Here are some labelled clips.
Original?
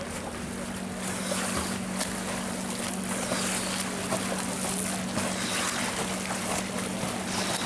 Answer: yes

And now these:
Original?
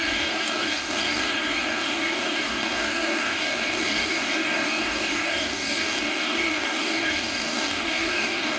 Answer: no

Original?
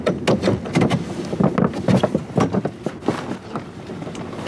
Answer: yes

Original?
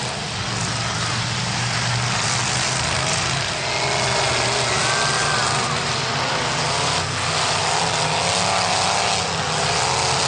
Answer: yes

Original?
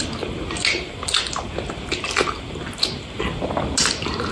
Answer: yes